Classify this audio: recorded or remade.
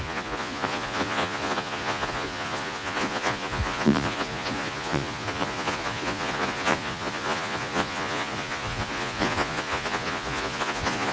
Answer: remade